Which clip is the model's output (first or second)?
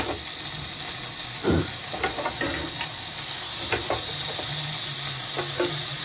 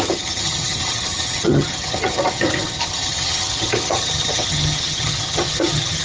second